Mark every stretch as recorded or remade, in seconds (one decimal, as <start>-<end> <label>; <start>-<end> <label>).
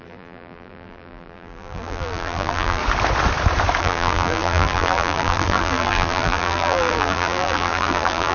0.0-2.8 remade; 2.8-3.8 recorded; 3.8-8.3 remade